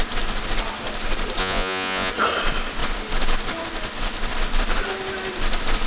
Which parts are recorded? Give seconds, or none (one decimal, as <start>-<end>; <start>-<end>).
0.0-1.4; 2.1-5.9